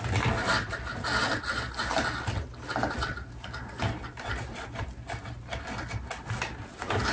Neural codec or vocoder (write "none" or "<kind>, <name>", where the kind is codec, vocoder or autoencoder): none